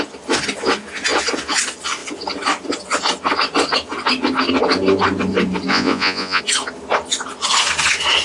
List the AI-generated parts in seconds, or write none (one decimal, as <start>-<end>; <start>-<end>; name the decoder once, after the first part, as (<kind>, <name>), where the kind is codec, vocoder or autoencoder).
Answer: 5.7-6.4 (vocoder, Vocos)

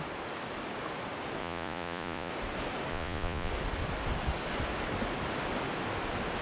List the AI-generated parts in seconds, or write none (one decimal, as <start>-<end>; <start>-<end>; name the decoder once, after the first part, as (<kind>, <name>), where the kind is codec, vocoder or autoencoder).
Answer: 1.4-2.3 (vocoder, Vocos); 2.9-3.5

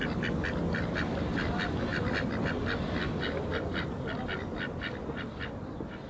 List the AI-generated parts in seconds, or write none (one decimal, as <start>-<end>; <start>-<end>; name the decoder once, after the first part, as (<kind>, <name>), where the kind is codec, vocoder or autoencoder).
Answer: none

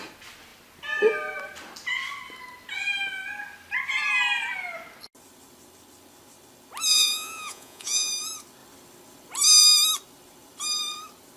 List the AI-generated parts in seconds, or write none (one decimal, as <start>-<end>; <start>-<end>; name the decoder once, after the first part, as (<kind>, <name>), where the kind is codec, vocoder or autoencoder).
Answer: 6.9-8.1 (vocoder, Vocos)

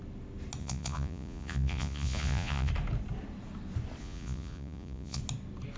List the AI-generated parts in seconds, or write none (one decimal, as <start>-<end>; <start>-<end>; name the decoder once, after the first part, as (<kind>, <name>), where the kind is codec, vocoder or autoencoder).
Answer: 0.6-2.7 (vocoder, Vocos); 4.0-5.2

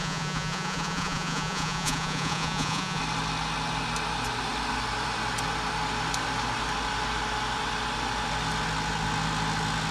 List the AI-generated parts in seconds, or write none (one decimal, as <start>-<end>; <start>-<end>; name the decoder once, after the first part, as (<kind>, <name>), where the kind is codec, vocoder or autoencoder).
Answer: 0.0-3.0 (vocoder, Vocos)